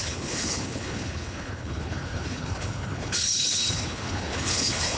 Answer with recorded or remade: remade